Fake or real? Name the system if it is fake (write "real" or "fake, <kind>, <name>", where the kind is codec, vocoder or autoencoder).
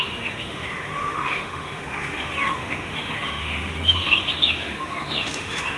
fake, autoencoder, DAC-VAE